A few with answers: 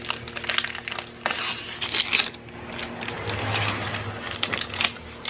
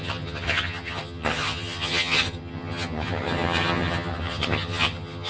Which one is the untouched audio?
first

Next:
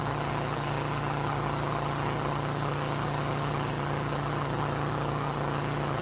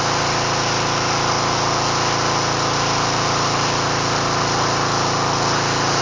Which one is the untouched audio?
second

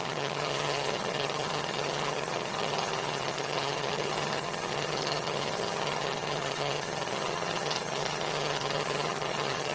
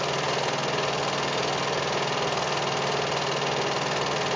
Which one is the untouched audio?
second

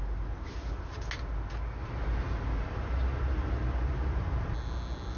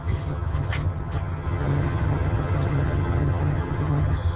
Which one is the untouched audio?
first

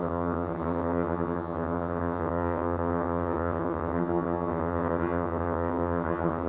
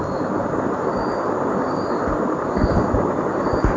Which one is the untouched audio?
second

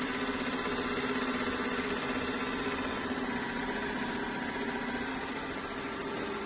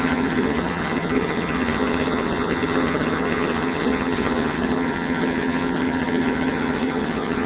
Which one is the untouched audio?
first